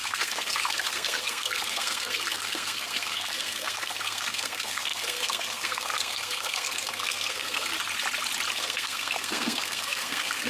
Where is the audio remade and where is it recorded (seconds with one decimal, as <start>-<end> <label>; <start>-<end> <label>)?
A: 0.0-7.7 remade; 7.7-8.5 recorded; 8.5-10.5 remade